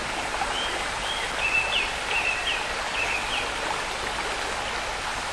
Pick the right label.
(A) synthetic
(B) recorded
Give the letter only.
B